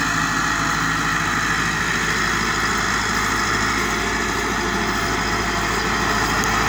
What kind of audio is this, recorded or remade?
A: recorded